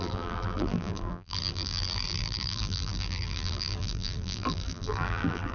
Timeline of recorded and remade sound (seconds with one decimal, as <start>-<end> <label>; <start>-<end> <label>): 0.0-5.5 remade